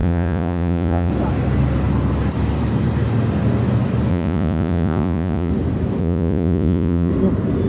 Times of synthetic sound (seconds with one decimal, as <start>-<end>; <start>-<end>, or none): 0.0-1.1; 4.1-5.5; 6.0-7.1